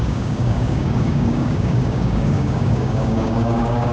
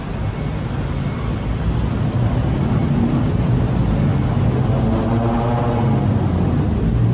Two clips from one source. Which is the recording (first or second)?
second